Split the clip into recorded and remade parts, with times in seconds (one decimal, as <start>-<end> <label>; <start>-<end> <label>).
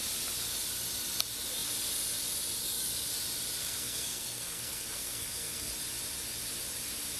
0.0-3.6 recorded; 3.6-5.7 remade; 5.7-7.2 recorded